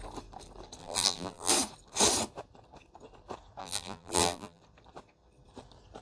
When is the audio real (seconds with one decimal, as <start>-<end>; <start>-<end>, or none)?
0.0-0.8; 1.5-3.6; 4.6-6.0